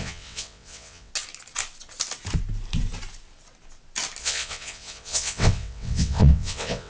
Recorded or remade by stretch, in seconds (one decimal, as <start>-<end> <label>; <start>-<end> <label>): 0.0-1.1 remade; 1.1-4.2 recorded; 4.2-6.9 remade